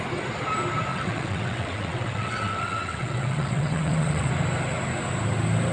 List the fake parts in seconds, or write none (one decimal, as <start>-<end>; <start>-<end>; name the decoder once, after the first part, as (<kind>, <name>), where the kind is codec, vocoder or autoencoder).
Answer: 0.9-4.3 (vocoder, WaveNeXt)